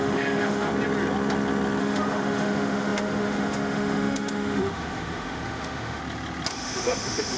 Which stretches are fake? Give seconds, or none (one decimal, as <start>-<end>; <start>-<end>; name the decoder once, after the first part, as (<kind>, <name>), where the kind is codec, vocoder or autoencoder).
0.0-0.7 (autoencoder, DAC-VAE); 1.8-6.0; 6.5-7.4